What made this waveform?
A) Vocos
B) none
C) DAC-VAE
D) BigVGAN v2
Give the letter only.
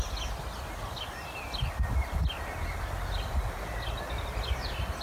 B